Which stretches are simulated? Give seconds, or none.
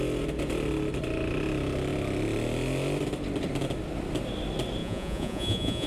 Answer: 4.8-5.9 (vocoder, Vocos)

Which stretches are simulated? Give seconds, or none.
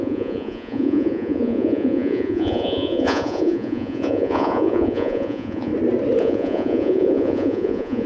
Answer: 0.0-5.7 (vocoder, Vocos); 6.2-8.1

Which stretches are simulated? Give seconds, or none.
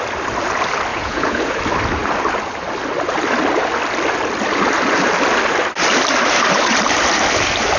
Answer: 0.9-1.6 (vocoder, Vocos)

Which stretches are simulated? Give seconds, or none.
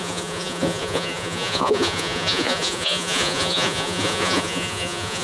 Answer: 0.0-5.2 (vocoder, Vocos)